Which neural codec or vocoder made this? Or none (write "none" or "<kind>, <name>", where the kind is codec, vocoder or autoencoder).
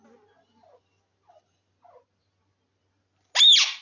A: none